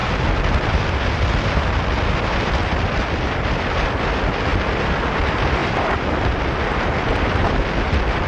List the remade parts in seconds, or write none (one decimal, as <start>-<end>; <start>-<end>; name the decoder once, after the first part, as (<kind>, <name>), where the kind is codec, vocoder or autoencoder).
0.0-4.5 (vocoder, BigVGAN v2); 5.1-8.3

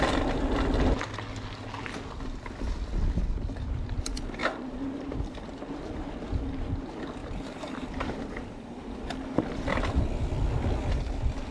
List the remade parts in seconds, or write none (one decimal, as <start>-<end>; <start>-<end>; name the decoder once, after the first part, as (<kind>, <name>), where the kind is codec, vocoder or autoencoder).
4.4-5.3 (vocoder, BigVGAN v2); 7.2-8.4

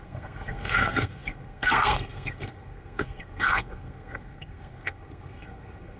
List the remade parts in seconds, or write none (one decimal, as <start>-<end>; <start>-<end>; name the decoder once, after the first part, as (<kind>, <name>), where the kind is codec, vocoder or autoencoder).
0.0-6.0 (codec, SNAC)